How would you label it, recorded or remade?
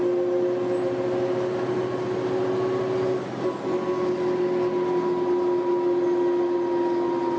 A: recorded